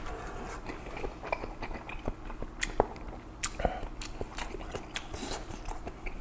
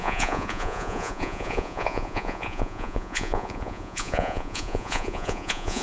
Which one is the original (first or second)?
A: first